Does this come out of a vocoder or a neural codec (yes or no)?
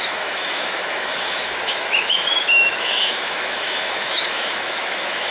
yes